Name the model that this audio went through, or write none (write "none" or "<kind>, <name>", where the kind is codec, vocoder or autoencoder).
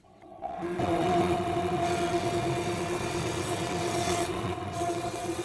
vocoder, WaveNeXt